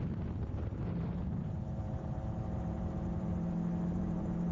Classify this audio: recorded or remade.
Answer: remade